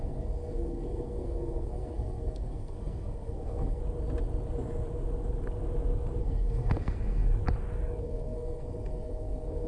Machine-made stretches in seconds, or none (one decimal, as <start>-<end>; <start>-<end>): 0.0-3.8; 6.2-7.3; 8.0-9.7